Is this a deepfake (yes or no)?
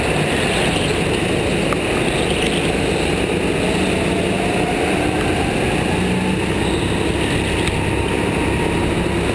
no